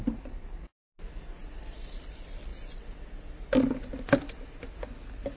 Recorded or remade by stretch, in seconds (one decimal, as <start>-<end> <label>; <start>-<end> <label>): 0.0-5.4 recorded